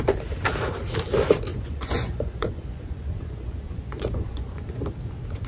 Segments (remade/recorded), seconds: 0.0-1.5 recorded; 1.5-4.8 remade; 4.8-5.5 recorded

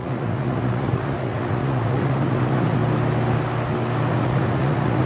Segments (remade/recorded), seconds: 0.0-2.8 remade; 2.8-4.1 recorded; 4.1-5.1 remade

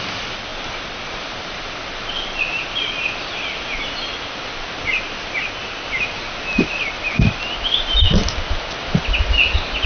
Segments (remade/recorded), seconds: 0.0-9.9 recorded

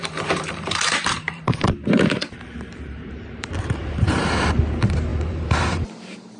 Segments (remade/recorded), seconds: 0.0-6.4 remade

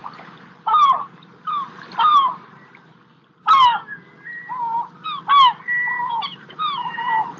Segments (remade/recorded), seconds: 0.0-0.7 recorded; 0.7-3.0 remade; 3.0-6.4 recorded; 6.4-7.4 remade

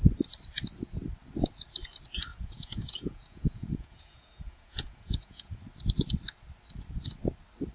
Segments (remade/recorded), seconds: 0.0-2.3 recorded; 2.3-5.6 remade; 5.6-7.7 recorded

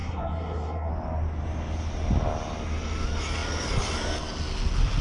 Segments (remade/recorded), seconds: 0.0-0.9 remade; 0.9-5.0 recorded

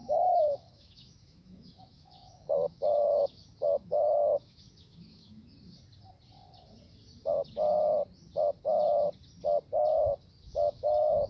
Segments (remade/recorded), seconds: 0.0-5.5 remade; 5.5-10.4 recorded; 10.4-11.3 remade